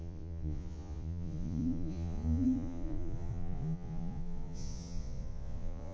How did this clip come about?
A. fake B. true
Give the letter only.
A